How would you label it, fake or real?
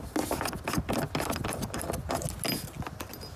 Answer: real